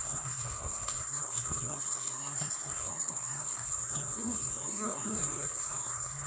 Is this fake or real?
fake